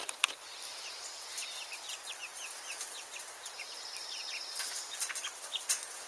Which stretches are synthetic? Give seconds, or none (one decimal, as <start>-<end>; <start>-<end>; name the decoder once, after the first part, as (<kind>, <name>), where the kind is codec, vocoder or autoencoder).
none